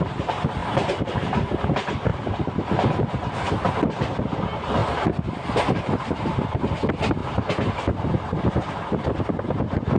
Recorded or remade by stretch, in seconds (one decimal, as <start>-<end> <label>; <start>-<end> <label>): 0.0-4.8 remade; 4.8-5.7 recorded; 5.7-10.0 remade